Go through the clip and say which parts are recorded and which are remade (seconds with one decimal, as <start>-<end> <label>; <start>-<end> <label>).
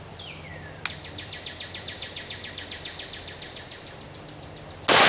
0.0-5.1 recorded